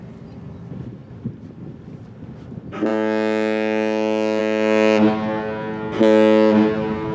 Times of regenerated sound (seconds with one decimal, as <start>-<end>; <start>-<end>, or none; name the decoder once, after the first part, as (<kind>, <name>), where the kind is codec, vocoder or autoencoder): none